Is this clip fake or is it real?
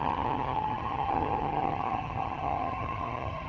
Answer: fake